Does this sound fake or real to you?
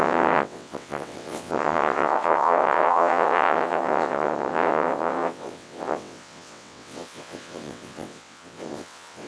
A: fake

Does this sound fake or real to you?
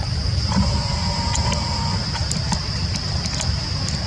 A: real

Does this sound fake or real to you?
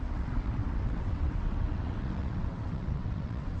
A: fake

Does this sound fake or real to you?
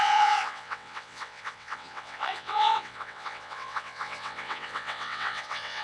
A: fake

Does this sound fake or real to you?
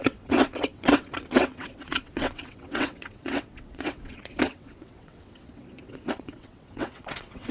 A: fake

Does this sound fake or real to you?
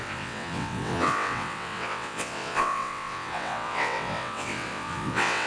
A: fake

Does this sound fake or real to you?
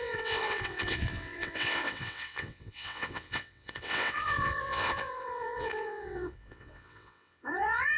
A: fake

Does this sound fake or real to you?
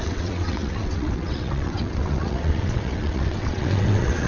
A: fake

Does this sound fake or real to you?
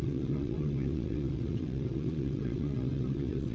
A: fake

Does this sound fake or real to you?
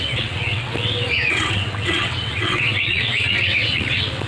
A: fake